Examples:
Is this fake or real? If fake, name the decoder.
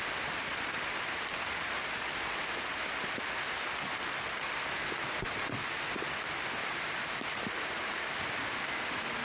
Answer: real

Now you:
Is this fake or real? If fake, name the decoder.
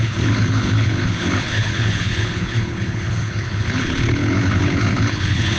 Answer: fake, codec, HILCodec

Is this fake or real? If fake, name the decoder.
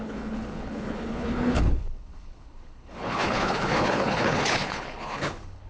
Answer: fake, codec, HILCodec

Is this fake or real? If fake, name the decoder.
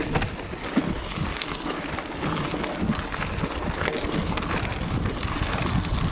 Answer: real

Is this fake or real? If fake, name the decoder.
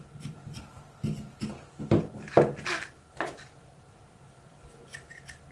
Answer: real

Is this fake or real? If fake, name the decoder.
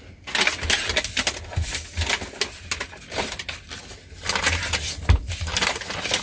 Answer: real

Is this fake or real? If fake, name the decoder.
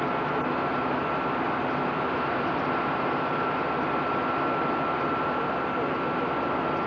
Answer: real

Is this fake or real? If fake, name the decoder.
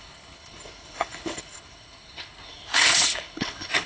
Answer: fake, codec, HILCodec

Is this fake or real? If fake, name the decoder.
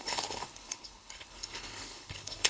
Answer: fake, codec, HILCodec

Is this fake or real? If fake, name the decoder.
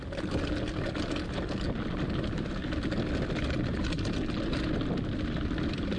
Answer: real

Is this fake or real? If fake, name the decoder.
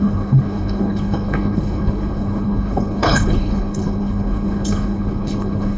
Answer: fake, codec, HILCodec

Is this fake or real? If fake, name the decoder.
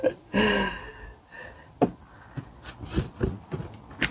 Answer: real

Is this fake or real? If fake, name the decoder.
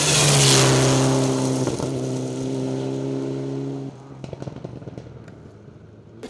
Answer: real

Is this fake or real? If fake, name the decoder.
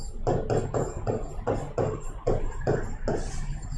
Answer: real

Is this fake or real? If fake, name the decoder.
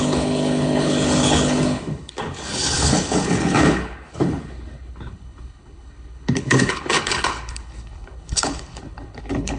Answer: fake, codec, HILCodec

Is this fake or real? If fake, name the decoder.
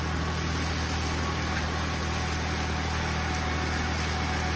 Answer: real